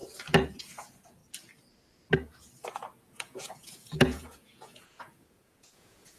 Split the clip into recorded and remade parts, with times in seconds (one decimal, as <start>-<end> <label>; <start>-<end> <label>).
0.0-0.6 recorded; 0.6-1.2 remade; 1.2-3.0 recorded; 3.0-6.2 remade